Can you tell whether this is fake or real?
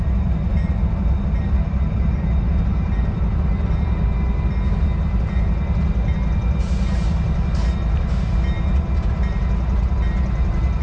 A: real